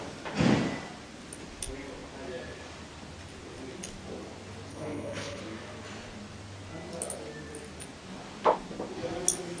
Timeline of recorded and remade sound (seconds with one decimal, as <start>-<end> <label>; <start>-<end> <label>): 0.0-4.7 recorded; 4.7-5.4 remade; 5.4-9.6 recorded